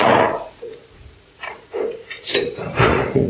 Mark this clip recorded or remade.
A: remade